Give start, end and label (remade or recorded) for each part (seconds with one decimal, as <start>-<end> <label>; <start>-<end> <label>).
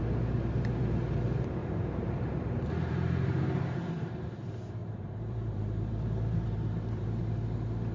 0.0-1.6 recorded; 1.6-2.9 remade; 2.9-4.8 recorded; 4.8-7.2 remade; 7.2-7.9 recorded